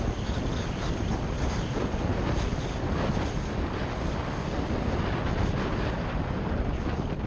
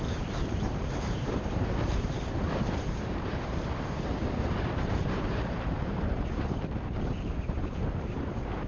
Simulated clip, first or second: second